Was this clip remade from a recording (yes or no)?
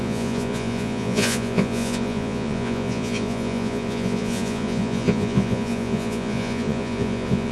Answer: yes